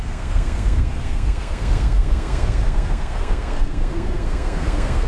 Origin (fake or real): fake